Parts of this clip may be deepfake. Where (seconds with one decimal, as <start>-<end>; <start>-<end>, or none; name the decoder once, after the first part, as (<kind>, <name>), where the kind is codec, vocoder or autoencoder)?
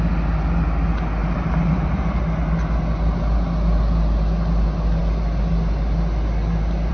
1.2-2.2 (vocoder, BigVGAN v2)